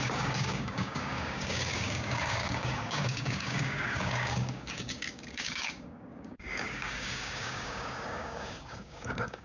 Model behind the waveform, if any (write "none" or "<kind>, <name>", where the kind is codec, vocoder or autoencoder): codec, DAC